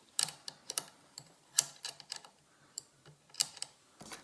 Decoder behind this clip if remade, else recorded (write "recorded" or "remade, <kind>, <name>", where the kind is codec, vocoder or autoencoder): remade, vocoder, BigVGAN v2